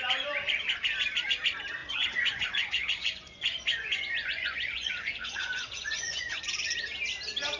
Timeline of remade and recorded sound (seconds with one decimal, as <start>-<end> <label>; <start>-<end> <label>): 0.0-1.8 recorded; 1.8-6.4 remade; 6.4-7.6 recorded